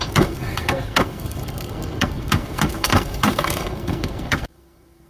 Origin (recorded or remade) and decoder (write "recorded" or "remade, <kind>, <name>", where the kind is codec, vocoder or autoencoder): remade, codec, SNAC